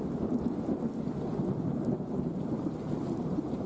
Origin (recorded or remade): recorded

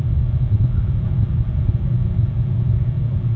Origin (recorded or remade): recorded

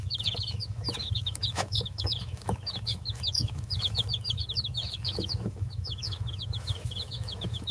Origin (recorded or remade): remade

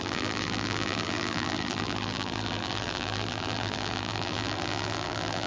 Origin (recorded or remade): remade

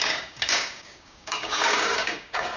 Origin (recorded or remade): remade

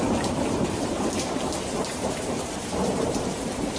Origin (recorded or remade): remade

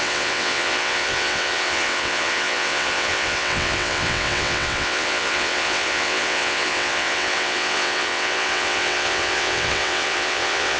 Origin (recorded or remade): remade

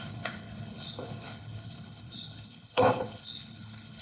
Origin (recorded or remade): remade